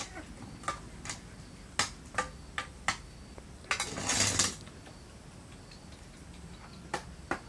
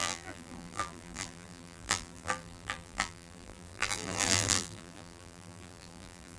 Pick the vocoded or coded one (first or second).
second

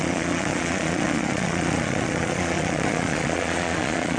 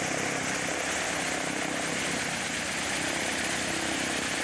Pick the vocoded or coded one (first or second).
first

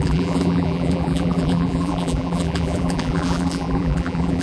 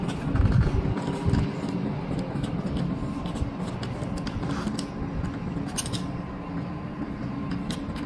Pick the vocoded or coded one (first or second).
first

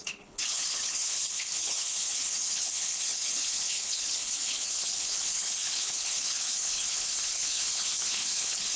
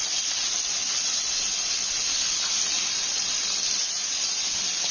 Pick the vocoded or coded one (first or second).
first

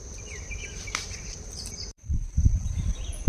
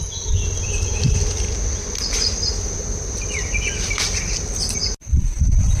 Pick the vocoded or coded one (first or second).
first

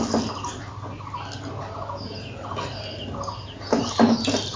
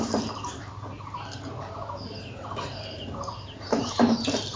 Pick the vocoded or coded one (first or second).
second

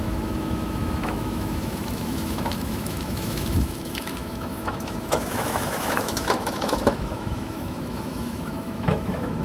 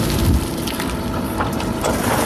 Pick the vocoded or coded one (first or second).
first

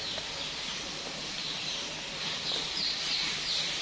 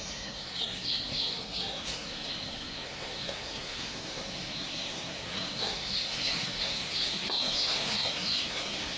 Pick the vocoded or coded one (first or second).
second